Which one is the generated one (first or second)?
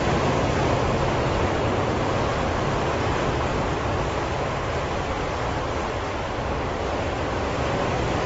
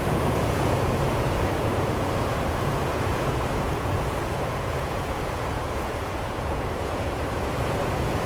second